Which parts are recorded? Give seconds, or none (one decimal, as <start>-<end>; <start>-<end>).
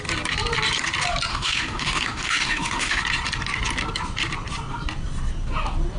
0.0-1.3; 3.0-6.0